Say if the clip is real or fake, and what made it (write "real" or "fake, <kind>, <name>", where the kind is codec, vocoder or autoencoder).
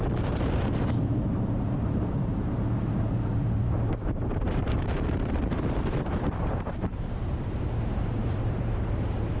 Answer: fake, vocoder, BigVGAN v2